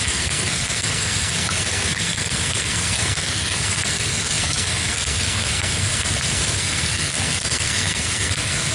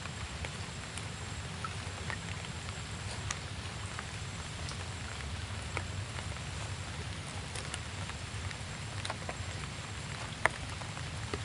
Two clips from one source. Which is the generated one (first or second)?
first